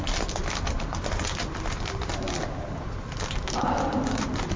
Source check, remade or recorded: recorded